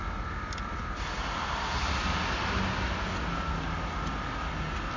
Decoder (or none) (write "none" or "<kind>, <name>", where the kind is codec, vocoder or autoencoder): none